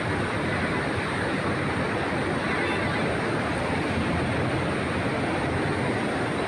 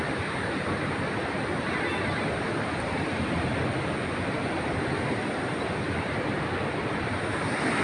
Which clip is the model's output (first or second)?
second